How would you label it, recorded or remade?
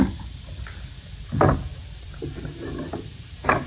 remade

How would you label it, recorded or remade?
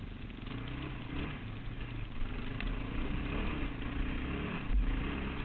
recorded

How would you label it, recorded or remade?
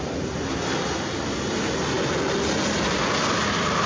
recorded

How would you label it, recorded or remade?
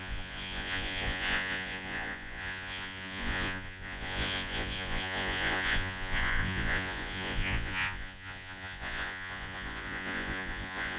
remade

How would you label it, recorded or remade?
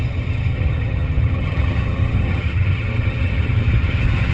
remade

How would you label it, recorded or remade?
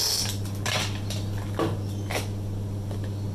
recorded